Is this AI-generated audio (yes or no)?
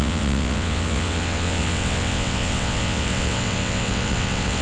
yes